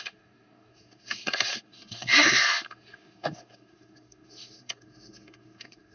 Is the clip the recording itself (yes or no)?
no